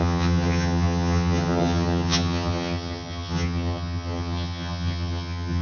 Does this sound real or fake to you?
fake